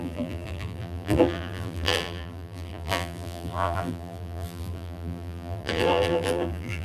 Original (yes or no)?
no